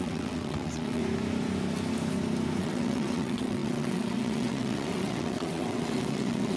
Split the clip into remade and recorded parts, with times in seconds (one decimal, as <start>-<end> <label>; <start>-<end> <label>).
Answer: 0.0-1.0 remade; 1.0-2.6 recorded; 2.6-6.6 remade